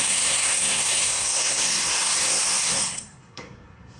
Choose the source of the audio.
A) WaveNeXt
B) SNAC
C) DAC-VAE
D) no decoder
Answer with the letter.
B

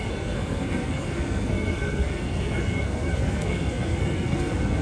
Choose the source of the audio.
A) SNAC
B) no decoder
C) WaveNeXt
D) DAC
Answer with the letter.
A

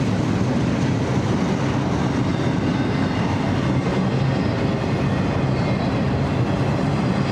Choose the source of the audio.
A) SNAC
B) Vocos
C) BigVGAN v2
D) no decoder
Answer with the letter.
D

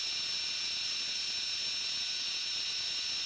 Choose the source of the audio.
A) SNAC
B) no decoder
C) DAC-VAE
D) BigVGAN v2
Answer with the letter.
B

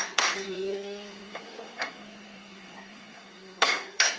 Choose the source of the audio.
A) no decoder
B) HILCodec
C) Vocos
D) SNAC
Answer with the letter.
D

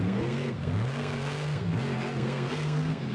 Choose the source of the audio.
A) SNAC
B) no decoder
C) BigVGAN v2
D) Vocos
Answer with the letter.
A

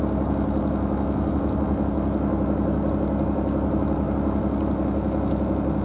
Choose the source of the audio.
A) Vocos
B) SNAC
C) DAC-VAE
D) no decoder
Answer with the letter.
D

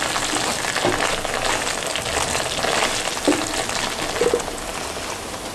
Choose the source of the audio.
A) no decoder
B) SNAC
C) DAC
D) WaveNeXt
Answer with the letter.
A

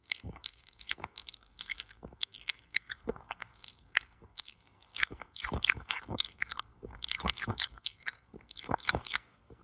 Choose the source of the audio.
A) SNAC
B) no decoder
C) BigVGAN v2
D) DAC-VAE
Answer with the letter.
A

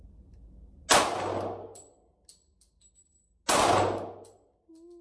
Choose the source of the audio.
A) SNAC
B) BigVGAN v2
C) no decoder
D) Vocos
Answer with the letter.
C